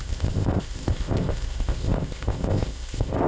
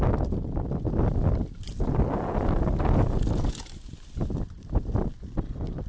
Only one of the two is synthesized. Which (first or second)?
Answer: first